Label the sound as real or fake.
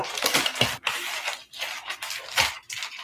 real